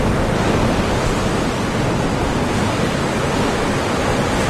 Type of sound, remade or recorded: recorded